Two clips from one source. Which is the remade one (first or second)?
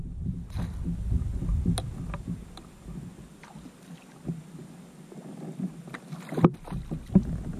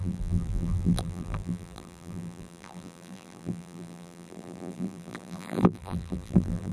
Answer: second